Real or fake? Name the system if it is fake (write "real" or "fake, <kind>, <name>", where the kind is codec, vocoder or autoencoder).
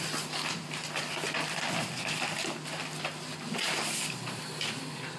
real